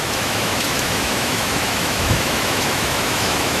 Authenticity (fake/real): fake